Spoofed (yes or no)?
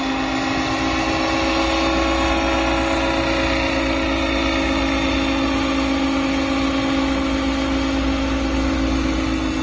no